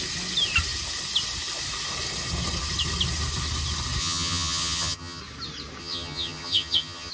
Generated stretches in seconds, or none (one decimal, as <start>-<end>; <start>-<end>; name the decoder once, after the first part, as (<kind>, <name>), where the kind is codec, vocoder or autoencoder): 4.0-5.2 (vocoder, HiFi-GAN); 5.8-7.1